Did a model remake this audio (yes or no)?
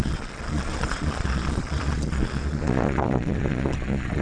yes